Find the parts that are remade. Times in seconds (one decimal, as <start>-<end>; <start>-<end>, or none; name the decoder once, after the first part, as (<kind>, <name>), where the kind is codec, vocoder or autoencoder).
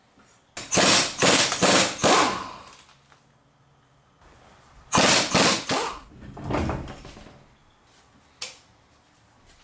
none